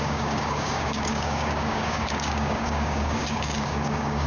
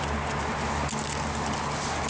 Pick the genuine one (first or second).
second